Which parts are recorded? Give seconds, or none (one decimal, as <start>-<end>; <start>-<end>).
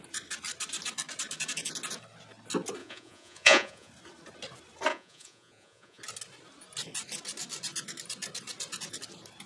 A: 0.0-2.8; 3.9-4.9; 6.0-9.5